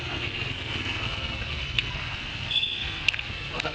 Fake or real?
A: fake